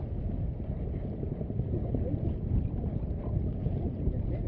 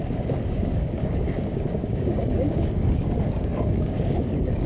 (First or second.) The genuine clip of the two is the first